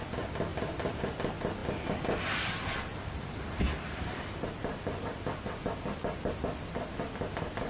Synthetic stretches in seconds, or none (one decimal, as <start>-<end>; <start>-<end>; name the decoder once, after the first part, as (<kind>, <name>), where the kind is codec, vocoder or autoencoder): 0.5-1.0 (vocoder, BigVGAN v2); 2.9-4.3